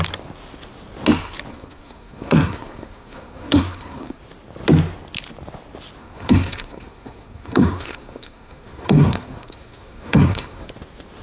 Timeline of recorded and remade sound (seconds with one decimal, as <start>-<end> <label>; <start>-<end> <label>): 0.0-1.5 recorded; 1.5-4.2 remade; 4.2-6.0 recorded; 6.0-10.7 remade; 10.7-11.2 recorded